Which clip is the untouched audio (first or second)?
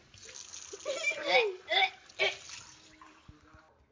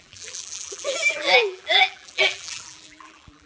first